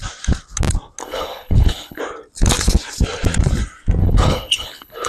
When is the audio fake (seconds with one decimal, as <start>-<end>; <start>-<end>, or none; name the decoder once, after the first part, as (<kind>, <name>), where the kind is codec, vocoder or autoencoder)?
1.0-2.0 (codec, HILCodec); 4.0-5.1